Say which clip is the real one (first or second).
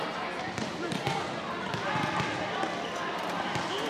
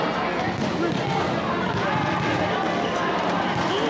second